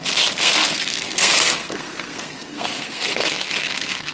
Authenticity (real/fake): fake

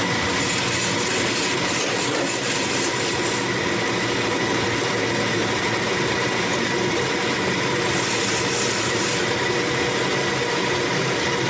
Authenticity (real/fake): real